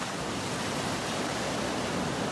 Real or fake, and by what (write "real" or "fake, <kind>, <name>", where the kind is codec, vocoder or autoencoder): real